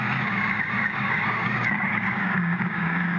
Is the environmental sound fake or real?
fake